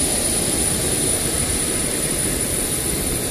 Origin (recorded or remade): remade